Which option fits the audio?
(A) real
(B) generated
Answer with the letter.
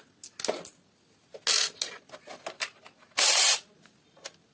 A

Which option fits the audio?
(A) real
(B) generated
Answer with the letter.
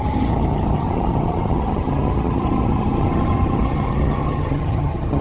B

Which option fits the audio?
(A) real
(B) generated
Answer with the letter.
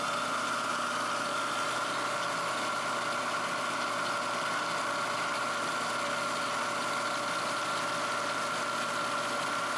A